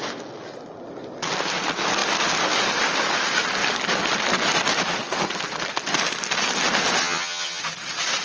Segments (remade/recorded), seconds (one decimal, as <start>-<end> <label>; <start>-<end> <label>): 0.0-7.0 recorded; 7.0-7.6 remade; 7.6-8.2 recorded